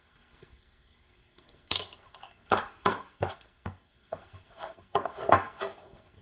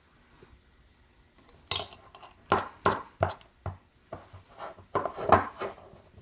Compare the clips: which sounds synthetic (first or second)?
first